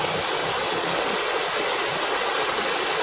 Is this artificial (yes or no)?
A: no